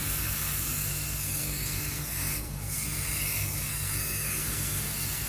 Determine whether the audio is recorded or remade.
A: remade